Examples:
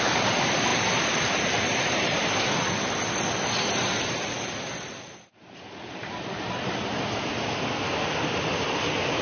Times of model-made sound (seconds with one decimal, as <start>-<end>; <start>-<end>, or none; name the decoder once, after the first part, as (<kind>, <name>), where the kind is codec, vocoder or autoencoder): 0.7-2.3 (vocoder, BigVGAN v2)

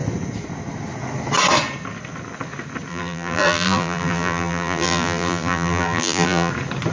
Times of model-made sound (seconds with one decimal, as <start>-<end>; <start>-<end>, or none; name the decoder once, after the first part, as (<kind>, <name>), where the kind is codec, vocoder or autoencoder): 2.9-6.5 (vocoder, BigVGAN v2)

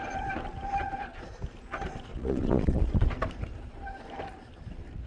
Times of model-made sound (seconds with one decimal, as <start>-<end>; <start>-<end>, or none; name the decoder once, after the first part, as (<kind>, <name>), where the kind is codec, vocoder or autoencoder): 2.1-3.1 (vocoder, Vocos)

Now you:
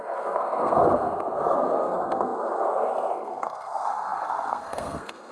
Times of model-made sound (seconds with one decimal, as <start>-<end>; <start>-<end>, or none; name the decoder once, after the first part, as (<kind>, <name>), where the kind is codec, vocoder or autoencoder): 0.0-5.3 (codec, SNAC)

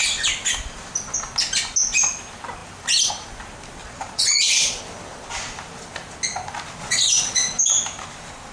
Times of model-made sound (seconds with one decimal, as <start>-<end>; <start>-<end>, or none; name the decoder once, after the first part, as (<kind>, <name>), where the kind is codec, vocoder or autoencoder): 3.8-4.8 (vocoder, Vocos); 6.8-7.6